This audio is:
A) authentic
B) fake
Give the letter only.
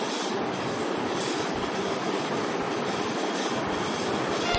A